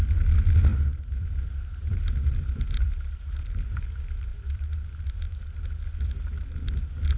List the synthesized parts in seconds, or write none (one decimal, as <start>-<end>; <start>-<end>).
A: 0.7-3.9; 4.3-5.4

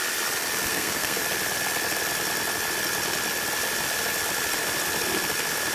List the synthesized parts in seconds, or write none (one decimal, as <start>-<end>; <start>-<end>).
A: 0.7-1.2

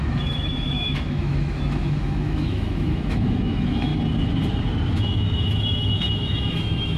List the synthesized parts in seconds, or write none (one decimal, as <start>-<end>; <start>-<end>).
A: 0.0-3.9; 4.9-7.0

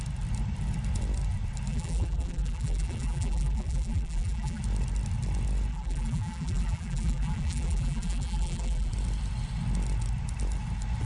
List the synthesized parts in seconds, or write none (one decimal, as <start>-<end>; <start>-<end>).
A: 1.7-4.6; 5.7-8.9